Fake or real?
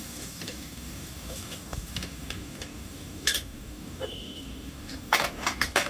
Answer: fake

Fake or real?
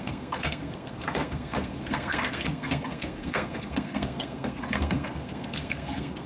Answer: fake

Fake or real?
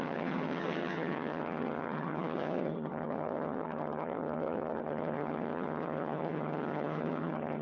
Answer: fake